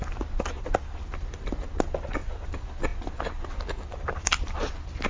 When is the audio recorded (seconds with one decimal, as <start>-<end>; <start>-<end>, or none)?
0.0-5.1